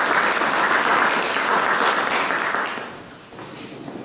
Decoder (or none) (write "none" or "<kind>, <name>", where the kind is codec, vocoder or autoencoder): none